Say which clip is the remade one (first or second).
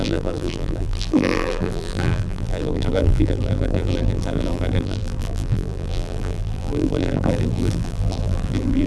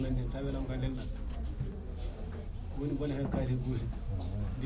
first